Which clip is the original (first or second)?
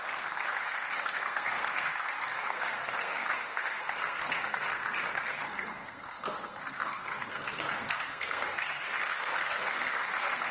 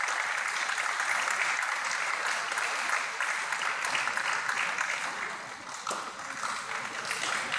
second